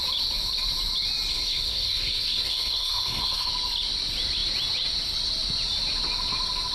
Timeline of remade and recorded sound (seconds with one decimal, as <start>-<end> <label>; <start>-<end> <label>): 0.0-1.3 recorded; 1.3-3.5 remade; 3.5-6.7 recorded

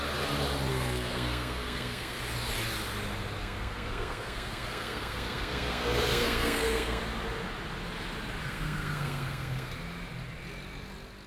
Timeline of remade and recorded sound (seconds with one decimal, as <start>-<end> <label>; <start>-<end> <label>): 0.0-0.7 recorded; 0.7-2.2 remade; 2.2-3.4 recorded; 3.4-7.0 remade; 7.0-8.4 recorded; 8.4-9.7 remade; 9.7-11.3 recorded

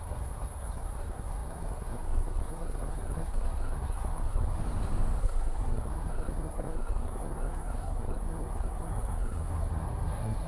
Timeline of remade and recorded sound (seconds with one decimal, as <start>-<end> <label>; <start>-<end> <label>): 0.0-4.6 remade; 4.6-5.2 recorded; 5.2-10.5 remade

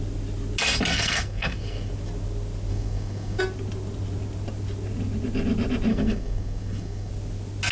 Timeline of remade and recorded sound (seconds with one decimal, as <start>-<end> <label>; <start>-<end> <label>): 0.0-0.9 recorded; 0.9-1.9 remade; 1.9-2.7 recorded; 2.7-3.4 remade; 3.4-5.9 recorded; 5.9-7.1 remade; 7.1-7.7 recorded

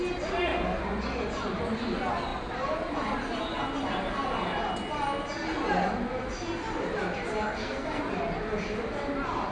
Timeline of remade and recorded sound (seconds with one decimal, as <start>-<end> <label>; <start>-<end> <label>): 0.0-7.3 recorded; 7.3-8.0 remade; 8.0-9.5 recorded

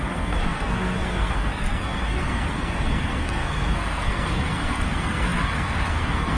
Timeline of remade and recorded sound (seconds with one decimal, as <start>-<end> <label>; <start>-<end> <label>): 0.0-6.4 remade

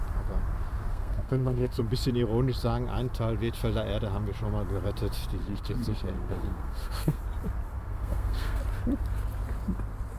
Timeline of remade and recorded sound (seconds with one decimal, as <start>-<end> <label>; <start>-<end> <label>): 0.0-0.9 recorded; 0.9-1.8 remade; 1.8-5.4 recorded; 5.4-7.2 remade; 7.2-7.7 recorded; 7.7-8.6 remade; 8.6-10.2 recorded

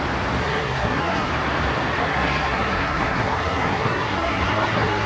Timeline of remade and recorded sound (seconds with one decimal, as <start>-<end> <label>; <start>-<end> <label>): 0.0-0.4 recorded; 0.4-1.3 remade; 1.3-2.0 recorded; 2.0-5.1 remade